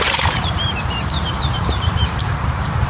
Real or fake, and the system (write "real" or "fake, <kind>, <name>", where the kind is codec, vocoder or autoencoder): fake, vocoder, BigVGAN v2